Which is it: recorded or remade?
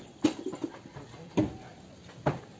recorded